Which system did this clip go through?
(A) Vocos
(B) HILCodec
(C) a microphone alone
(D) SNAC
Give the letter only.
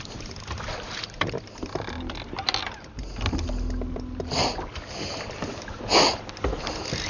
C